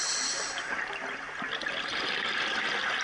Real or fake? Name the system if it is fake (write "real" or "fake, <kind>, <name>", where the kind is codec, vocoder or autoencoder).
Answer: real